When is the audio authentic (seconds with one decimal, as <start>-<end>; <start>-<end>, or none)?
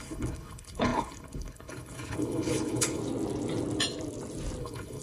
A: 3.0-4.6